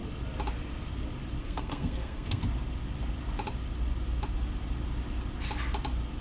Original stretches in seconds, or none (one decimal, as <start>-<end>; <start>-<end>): 0.0-1.4; 2.4-6.2